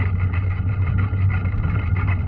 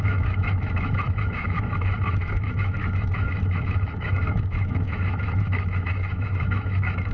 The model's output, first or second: second